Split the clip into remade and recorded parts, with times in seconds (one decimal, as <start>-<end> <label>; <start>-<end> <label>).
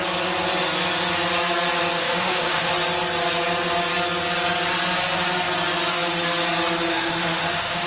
0.0-2.0 recorded; 2.0-2.7 remade; 2.7-6.9 recorded; 6.9-7.9 remade